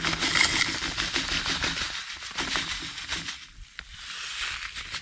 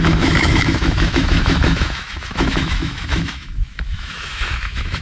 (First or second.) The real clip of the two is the first